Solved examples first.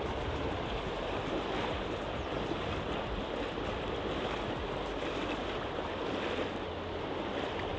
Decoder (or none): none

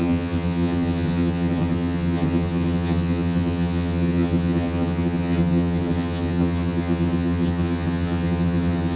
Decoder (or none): vocoder, HiFi-GAN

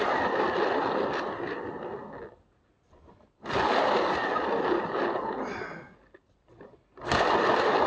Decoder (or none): none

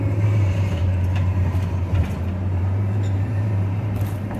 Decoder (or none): vocoder, BigVGAN v2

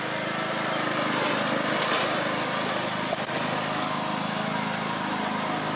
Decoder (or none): none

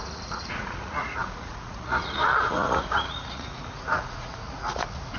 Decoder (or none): vocoder, Vocos